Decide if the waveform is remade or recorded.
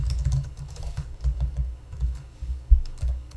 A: remade